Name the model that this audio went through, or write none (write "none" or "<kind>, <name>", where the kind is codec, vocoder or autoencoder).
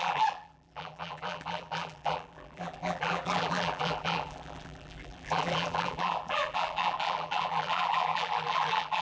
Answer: vocoder, BigVGAN v2